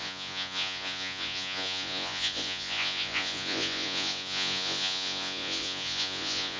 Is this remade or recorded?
remade